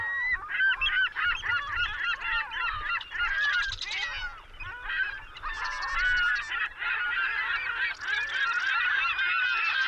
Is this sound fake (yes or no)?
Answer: no